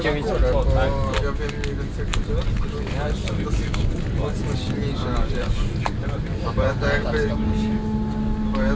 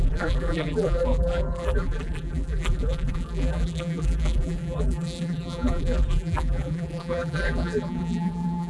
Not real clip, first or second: second